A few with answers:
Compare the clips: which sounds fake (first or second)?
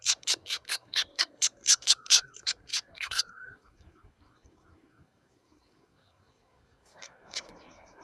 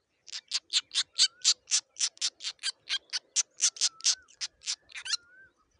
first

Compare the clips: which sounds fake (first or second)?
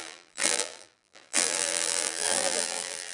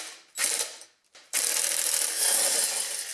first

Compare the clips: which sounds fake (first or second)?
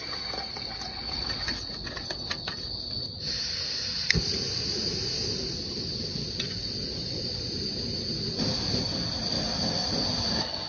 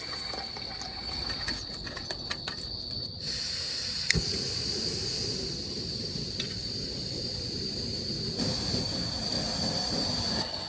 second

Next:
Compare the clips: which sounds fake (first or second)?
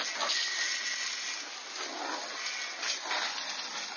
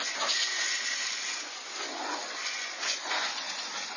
second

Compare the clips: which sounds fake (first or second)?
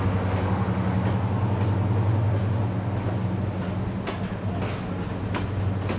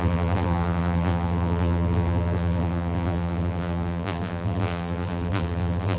second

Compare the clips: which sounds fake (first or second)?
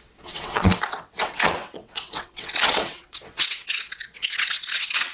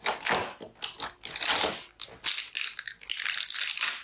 first